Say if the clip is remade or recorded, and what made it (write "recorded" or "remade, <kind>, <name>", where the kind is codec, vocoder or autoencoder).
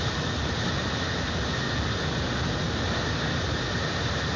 recorded